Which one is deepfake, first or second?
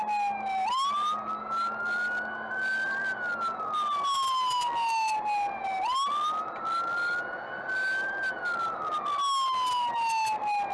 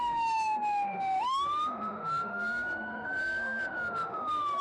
second